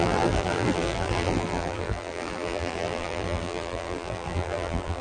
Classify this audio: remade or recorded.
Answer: remade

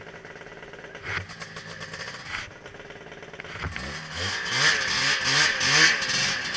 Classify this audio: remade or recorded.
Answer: recorded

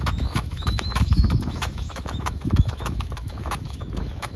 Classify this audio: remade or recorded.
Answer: remade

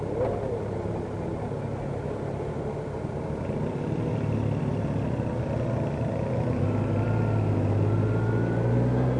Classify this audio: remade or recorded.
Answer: recorded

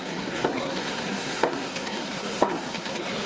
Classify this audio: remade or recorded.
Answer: remade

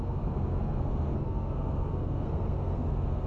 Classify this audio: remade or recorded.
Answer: remade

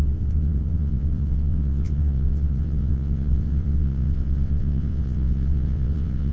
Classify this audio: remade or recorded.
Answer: remade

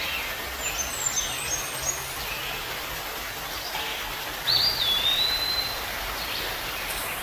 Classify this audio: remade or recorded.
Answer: recorded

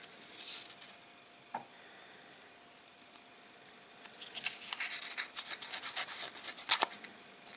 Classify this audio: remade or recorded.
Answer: recorded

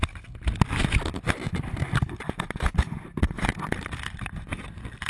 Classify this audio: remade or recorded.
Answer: recorded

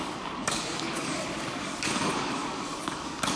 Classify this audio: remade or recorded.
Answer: remade